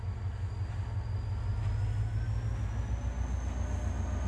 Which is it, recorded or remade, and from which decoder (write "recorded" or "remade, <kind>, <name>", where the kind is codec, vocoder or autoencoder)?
recorded